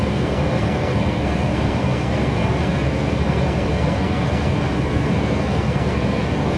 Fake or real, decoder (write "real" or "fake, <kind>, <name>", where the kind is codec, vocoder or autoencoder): fake, codec, SNAC